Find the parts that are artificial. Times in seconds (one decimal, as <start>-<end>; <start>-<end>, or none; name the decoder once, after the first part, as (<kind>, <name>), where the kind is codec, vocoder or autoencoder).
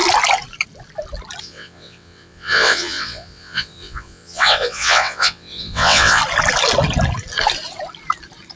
1.4-6.2 (vocoder, WaveNeXt)